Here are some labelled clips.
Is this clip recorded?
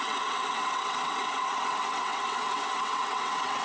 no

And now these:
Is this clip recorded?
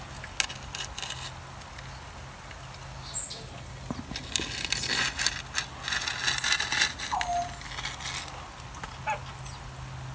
yes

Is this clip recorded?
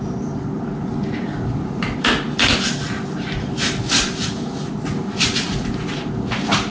yes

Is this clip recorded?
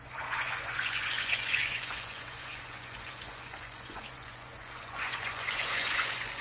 no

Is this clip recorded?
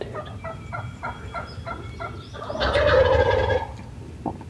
yes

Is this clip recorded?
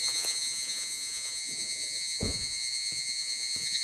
no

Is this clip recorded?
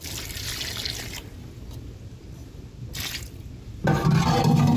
yes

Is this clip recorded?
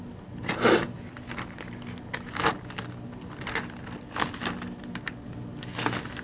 yes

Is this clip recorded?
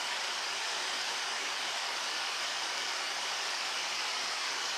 no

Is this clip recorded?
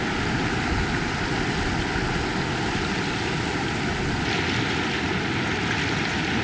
yes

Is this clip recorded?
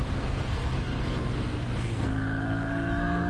no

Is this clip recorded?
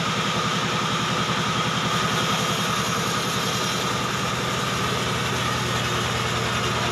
yes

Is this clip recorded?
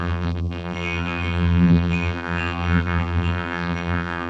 no